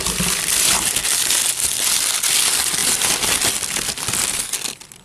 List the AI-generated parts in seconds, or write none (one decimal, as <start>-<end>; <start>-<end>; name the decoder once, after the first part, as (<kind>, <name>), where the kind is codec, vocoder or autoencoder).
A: none